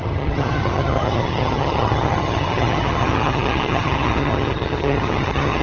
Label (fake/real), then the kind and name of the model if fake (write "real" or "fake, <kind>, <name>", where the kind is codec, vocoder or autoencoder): fake, vocoder, HiFi-GAN